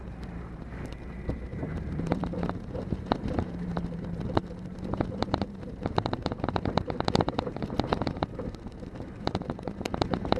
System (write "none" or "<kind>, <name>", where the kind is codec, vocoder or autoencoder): vocoder, BigVGAN v2